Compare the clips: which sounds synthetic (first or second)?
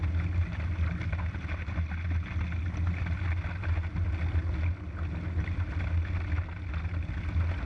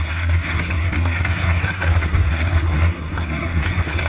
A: second